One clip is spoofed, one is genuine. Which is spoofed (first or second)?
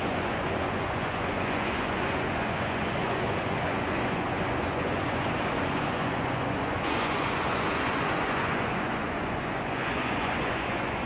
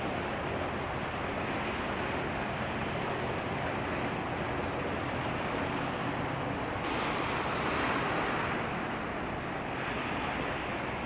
first